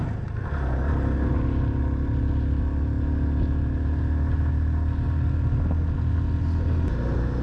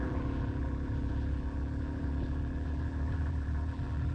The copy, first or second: second